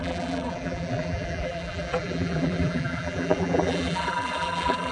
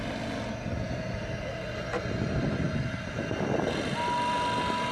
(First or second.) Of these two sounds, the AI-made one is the first